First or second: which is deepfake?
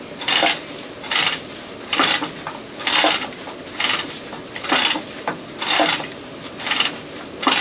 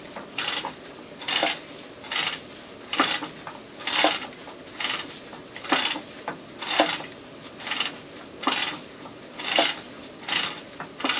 first